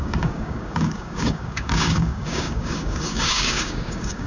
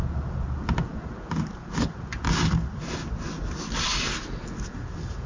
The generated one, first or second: first